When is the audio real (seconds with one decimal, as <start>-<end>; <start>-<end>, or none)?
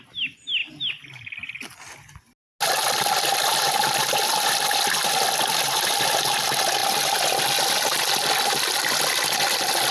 0.0-9.9